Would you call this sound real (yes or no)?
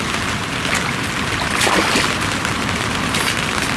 no